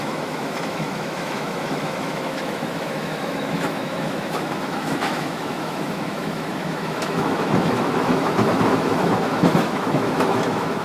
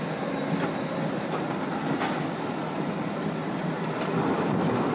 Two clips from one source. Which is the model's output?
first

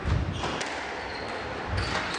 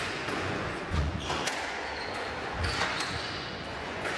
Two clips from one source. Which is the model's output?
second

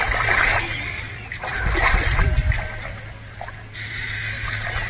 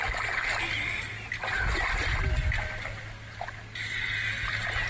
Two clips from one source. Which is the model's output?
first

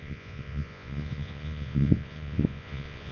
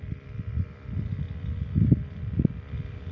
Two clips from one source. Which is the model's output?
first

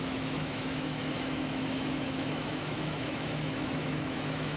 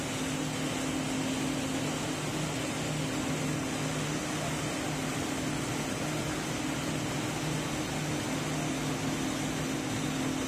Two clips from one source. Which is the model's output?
first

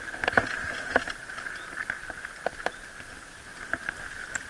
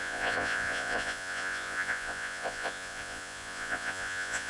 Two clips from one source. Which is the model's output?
second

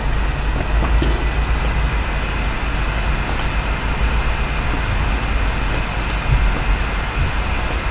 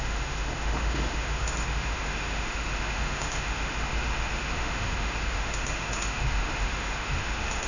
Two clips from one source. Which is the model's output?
second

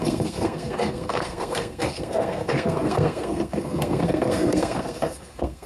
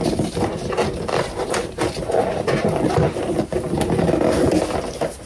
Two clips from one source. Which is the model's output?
first